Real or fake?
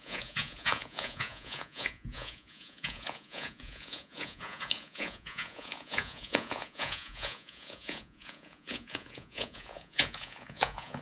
fake